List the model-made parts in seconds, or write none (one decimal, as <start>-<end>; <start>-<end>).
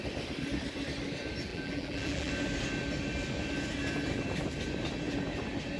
1.5-2.3